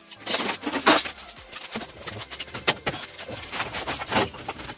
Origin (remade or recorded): remade